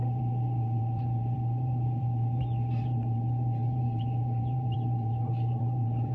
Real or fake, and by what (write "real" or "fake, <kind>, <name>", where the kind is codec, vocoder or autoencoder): fake, vocoder, BigVGAN v2